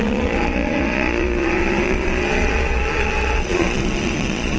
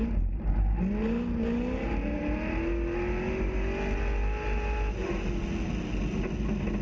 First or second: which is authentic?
second